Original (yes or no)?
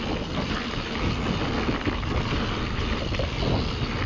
yes